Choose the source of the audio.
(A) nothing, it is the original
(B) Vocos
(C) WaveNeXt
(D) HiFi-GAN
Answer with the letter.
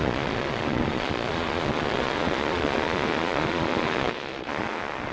B